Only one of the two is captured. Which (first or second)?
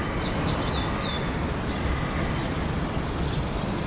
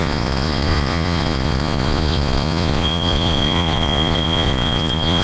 first